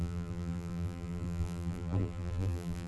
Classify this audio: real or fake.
fake